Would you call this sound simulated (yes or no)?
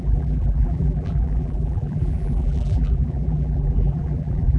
yes